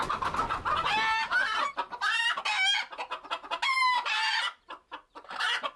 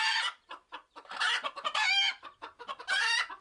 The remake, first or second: second